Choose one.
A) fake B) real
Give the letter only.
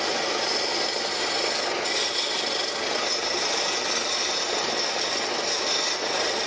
B